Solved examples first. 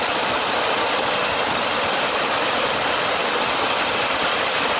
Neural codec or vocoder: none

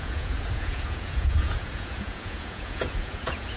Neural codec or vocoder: vocoder, Vocos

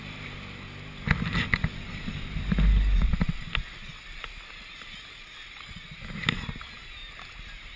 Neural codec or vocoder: none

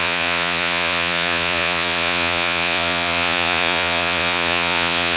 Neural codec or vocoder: vocoder, Vocos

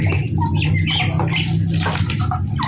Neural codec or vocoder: none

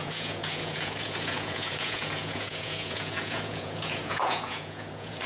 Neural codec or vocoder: vocoder, Vocos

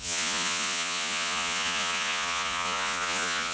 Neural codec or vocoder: vocoder, Vocos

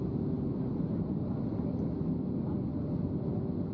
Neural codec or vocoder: none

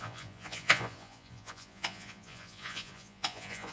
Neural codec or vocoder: vocoder, Vocos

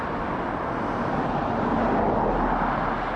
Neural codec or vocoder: none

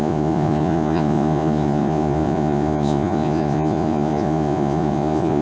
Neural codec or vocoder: vocoder, Vocos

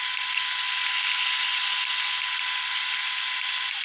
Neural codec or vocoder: none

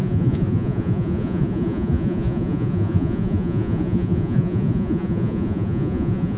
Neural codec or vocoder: vocoder, Vocos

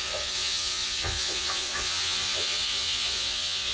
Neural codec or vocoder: vocoder, Vocos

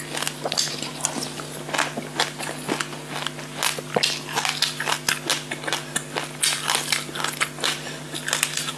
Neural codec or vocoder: none